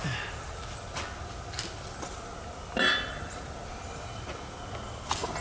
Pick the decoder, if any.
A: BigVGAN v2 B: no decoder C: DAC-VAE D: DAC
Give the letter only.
B